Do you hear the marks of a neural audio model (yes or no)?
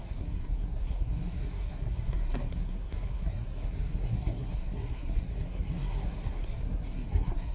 yes